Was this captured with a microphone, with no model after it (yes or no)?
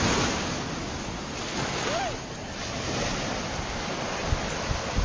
yes